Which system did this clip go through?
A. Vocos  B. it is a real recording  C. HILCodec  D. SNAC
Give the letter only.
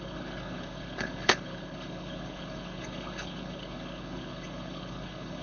C